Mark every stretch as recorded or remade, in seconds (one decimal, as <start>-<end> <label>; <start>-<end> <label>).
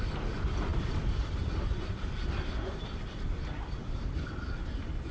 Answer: 0.0-5.1 recorded